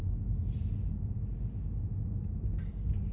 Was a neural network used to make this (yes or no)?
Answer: no